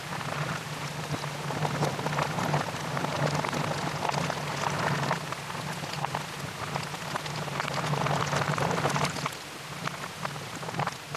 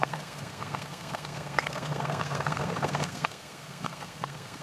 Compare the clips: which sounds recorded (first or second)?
first